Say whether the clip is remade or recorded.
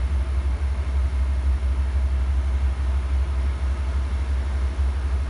recorded